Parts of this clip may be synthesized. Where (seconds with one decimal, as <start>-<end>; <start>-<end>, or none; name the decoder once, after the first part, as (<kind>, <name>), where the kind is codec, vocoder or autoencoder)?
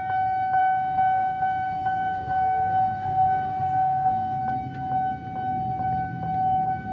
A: 0.6-4.4 (codec, SNAC)